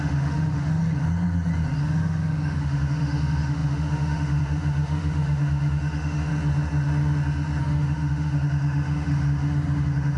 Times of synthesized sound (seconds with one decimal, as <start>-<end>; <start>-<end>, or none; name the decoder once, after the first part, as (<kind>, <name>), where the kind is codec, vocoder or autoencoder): 0.0-0.8 (autoencoder, DAC-VAE); 1.8-6.3; 7.6-10.2